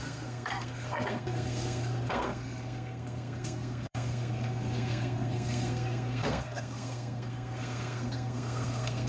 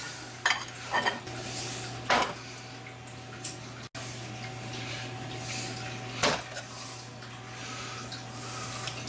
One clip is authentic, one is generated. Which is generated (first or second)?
first